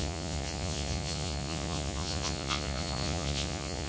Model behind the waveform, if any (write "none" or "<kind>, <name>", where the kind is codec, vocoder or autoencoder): vocoder, Vocos